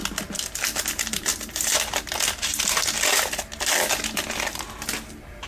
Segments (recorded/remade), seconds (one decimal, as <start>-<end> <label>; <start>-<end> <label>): 0.0-0.6 recorded; 0.6-1.3 remade; 1.3-4.6 recorded; 4.6-5.5 remade